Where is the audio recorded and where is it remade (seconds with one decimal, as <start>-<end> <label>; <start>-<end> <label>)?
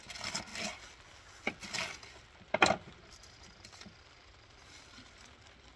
0.0-5.8 recorded